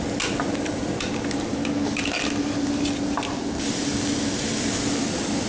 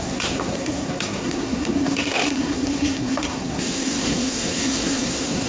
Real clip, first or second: first